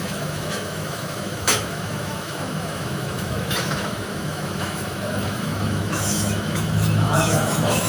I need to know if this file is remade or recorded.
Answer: remade